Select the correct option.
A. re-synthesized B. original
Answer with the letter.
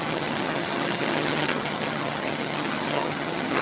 A